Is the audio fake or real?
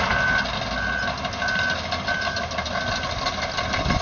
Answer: real